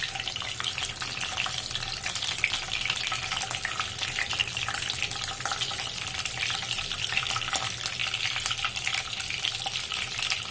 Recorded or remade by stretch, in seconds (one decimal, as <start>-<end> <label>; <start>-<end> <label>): 0.0-10.5 recorded